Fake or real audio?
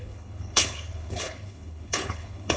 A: fake